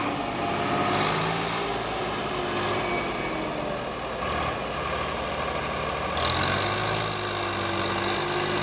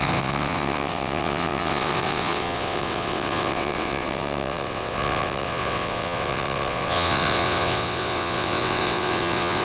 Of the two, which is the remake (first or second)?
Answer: second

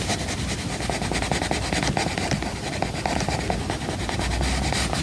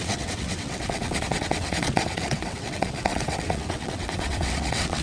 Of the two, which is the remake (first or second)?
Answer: second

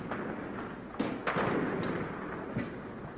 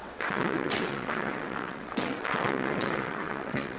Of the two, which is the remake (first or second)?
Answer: second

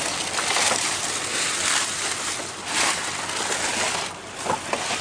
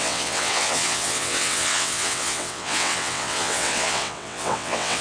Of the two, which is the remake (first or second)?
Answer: second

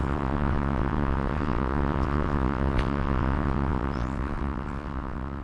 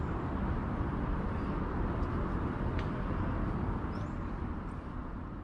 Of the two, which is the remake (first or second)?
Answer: first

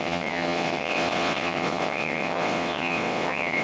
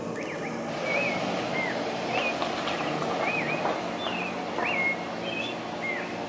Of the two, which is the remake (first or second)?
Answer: first